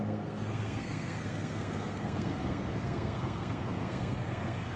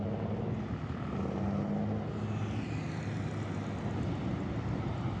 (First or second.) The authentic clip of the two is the second